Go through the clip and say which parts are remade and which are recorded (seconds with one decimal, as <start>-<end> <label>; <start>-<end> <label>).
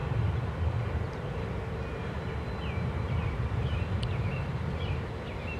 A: 0.0-5.6 recorded